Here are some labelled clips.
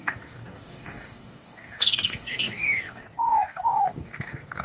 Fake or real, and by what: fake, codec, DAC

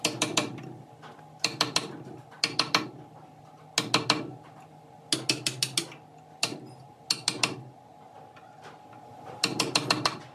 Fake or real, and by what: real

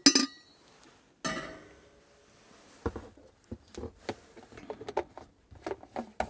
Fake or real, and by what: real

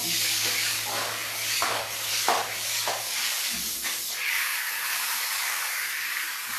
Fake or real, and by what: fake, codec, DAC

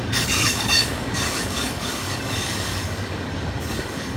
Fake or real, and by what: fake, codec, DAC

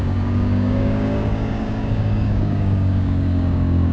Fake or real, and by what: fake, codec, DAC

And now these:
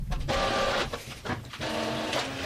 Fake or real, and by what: real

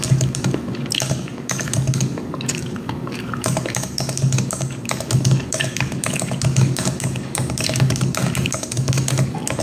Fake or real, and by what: fake, codec, DAC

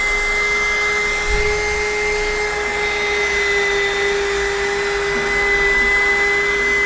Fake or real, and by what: real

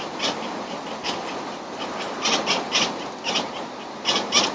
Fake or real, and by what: real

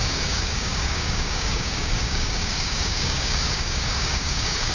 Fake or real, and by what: fake, codec, DAC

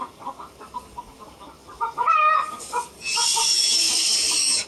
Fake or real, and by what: fake, codec, DAC